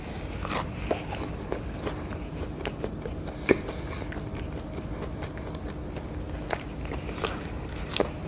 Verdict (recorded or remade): recorded